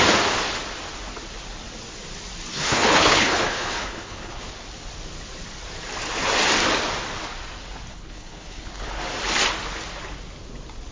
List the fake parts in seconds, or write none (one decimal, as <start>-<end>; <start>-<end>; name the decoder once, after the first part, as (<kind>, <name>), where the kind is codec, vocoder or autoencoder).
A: 2.5-4.4 (codec, HILCodec); 7.9-9.0